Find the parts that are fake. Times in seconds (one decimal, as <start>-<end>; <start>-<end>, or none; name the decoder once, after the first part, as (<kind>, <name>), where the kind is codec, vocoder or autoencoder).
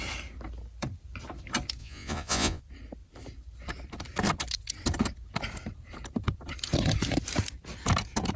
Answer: 1.8-2.6 (vocoder, Vocos)